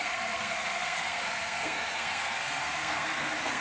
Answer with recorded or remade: remade